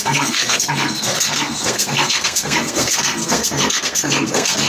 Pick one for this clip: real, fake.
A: fake